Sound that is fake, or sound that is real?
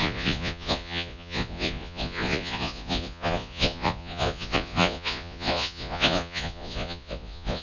fake